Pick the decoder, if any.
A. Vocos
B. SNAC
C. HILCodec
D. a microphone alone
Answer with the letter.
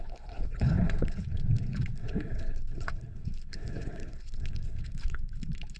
C